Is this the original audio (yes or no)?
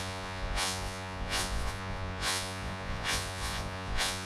no